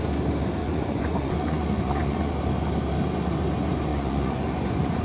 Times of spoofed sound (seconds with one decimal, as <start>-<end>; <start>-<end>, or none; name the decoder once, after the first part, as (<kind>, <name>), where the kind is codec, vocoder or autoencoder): 0.6-2.3 (vocoder, Vocos); 3.9-5.0